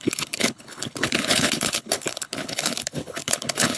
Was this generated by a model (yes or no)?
yes